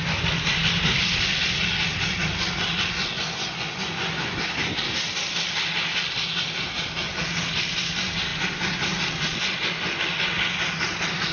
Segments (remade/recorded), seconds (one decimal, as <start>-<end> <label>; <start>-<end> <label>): 0.0-3.2 recorded; 3.2-4.7 remade; 4.7-11.3 recorded

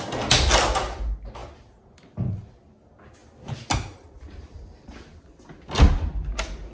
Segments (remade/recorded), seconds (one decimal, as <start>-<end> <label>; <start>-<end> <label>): 0.0-6.7 recorded

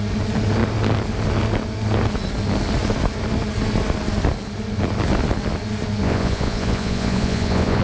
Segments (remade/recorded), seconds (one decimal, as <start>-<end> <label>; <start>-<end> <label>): 0.0-6.0 recorded; 6.0-7.8 remade

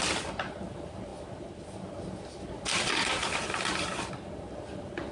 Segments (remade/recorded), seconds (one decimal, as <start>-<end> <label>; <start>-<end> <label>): 0.0-5.1 recorded

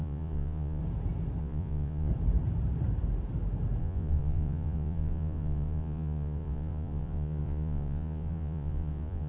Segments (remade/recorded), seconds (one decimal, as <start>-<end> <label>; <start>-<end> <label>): 0.0-0.8 remade; 0.8-1.4 recorded; 1.4-2.1 remade; 2.1-3.8 recorded; 3.8-9.3 remade

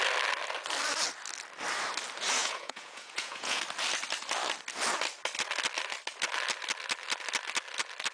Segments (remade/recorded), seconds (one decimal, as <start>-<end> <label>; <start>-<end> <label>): 0.0-2.4 recorded; 2.4-3.6 remade; 3.6-8.1 recorded

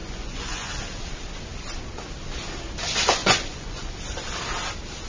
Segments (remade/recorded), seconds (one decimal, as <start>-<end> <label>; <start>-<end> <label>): 0.0-0.7 remade; 0.7-3.2 recorded; 3.2-3.9 remade; 3.9-5.1 recorded

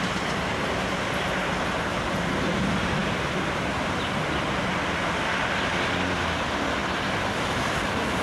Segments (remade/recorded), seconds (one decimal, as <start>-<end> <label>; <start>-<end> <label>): 0.0-8.2 recorded